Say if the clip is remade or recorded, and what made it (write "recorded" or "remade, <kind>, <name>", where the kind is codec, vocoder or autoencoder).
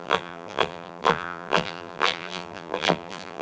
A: remade, vocoder, BigVGAN v2